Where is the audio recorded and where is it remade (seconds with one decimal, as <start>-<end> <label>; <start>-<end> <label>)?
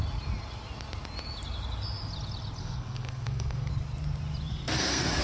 0.0-2.6 recorded; 2.6-3.7 remade; 3.7-4.5 recorded; 4.5-5.2 remade